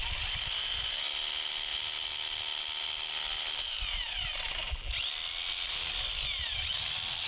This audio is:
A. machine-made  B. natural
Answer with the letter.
B